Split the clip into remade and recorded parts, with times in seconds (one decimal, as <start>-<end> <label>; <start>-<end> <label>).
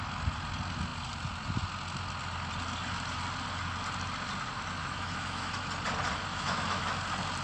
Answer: 0.0-4.8 recorded; 4.8-5.6 remade; 5.6-6.3 recorded; 6.3-7.0 remade; 7.0-7.4 recorded